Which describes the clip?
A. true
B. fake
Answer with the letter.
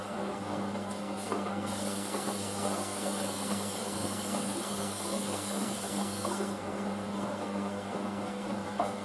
B